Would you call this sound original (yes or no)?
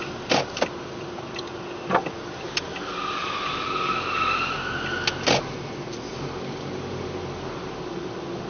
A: yes